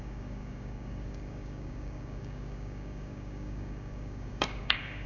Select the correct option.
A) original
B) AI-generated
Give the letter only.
B